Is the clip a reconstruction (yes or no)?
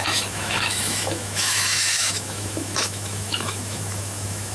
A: yes